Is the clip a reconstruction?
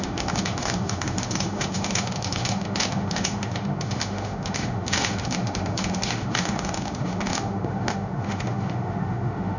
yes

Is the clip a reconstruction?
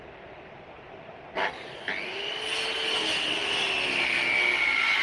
no